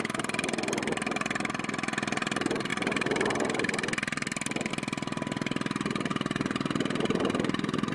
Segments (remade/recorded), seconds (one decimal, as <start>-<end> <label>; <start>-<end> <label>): 0.0-7.9 recorded